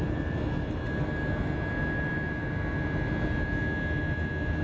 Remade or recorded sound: recorded